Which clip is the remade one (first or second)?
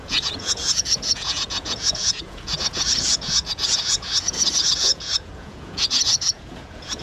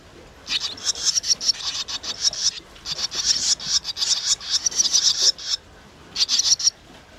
first